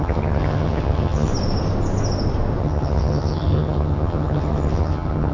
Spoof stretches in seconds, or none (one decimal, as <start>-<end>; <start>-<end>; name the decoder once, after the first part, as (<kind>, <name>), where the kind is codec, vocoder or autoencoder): 0.0-1.3 (vocoder, HiFi-GAN); 2.6-5.3